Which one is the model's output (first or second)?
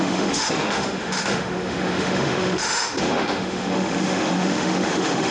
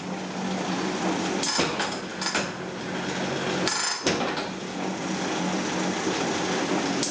first